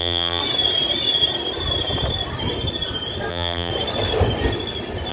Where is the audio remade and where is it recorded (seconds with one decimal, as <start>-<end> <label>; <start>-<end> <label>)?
0.0-0.4 remade; 0.4-3.3 recorded; 3.3-3.7 remade; 3.7-5.1 recorded